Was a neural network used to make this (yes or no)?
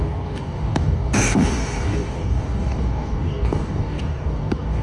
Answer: yes